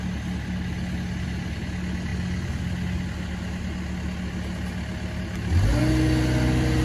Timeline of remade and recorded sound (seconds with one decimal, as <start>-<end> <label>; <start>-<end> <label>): 0.0-6.8 recorded